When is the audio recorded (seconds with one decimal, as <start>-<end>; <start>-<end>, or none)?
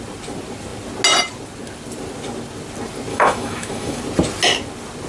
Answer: 0.0-3.1; 4.0-5.1